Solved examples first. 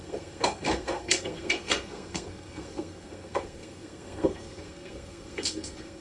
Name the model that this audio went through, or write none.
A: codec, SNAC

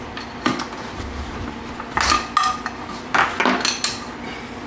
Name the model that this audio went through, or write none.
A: none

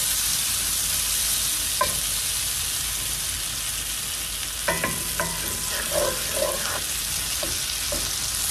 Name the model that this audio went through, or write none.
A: none